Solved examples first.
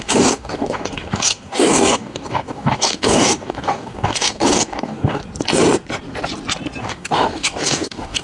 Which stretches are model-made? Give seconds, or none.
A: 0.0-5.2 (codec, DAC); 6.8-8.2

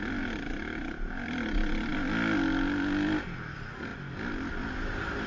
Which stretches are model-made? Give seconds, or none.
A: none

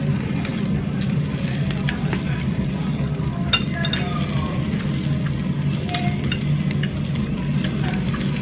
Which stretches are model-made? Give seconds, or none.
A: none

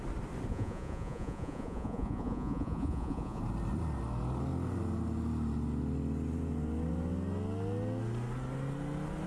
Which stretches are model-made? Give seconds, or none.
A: 0.5-3.4 (vocoder, Vocos)

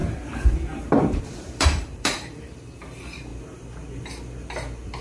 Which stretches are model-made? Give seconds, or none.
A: 0.0-3.3 (vocoder, BigVGAN v2)

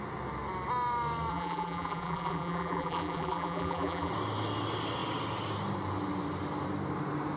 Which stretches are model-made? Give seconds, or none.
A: 1.3-4.1 (vocoder, BigVGAN v2)

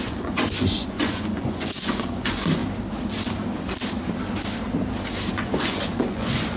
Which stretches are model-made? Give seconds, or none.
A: 0.0-2.6 (vocoder, Vocos); 5.3-6.6

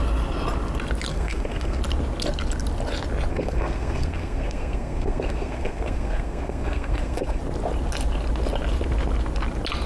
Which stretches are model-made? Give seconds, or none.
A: 1.1-1.8 (codec, SNAC); 3.3-7.4